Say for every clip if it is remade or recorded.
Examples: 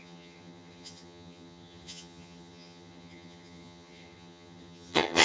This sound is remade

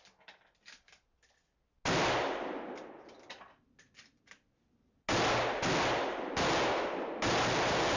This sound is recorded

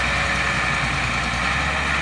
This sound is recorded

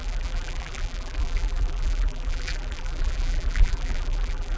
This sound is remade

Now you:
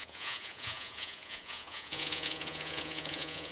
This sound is remade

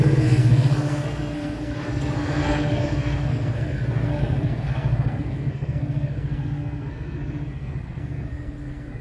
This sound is remade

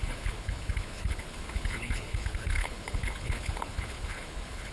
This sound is remade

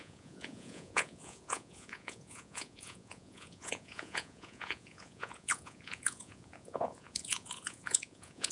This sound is remade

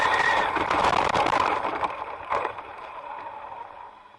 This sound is remade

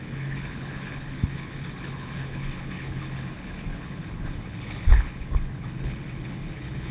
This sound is remade